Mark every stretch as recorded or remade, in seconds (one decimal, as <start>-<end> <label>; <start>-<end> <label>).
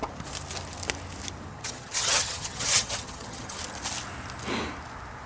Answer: 0.0-1.5 recorded; 1.5-3.6 remade; 3.6-5.3 recorded